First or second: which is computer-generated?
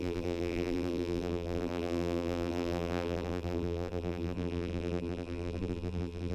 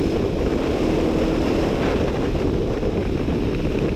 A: first